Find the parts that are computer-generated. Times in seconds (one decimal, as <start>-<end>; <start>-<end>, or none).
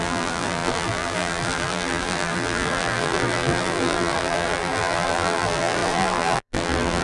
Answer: 0.0-7.0